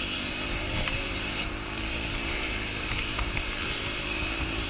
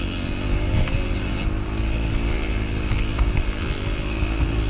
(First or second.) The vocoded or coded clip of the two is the first